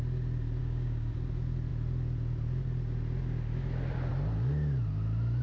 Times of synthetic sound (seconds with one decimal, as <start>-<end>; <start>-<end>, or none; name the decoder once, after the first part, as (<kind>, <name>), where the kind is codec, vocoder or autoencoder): 0.6-1.1 (codec, DAC)